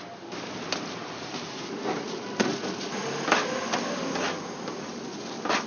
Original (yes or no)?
yes